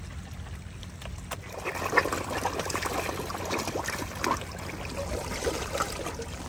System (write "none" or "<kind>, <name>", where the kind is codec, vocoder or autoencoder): none